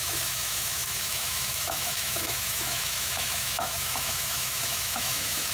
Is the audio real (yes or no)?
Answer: no